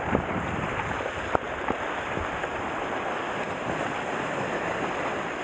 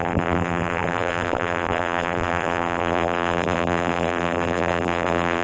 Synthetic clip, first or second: second